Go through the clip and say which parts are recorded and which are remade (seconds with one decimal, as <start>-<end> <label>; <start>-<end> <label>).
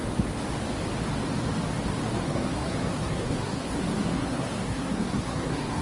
0.0-2.2 recorded; 2.2-5.8 remade